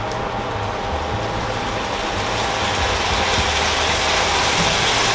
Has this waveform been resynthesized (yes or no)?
no